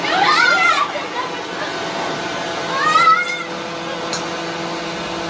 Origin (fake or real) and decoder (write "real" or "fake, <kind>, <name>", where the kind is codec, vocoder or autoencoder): real